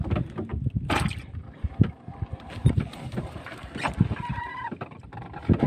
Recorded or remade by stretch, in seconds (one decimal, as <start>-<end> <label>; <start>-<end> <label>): 0.0-5.7 recorded